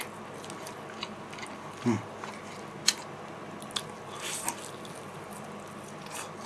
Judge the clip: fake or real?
real